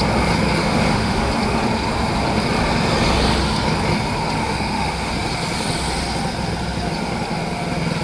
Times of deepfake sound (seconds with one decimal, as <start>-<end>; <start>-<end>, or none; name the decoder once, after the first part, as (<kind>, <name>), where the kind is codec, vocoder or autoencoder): 0.6-1.3 (autoencoder, DAC-VAE); 4.4-5.1